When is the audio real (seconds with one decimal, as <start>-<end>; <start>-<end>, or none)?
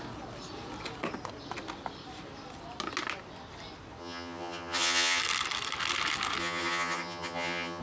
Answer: 0.0-4.0; 5.2-6.4